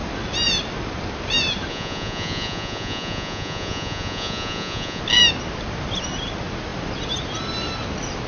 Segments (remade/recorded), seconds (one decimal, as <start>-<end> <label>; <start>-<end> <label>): 0.0-1.7 recorded; 1.7-5.0 remade; 5.0-8.3 recorded